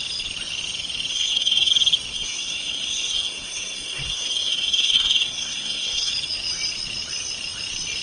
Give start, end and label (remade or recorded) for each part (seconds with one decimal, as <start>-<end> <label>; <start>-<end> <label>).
0.0-1.1 recorded; 1.1-1.7 remade; 1.7-2.1 recorded; 2.1-6.1 remade; 6.1-8.0 recorded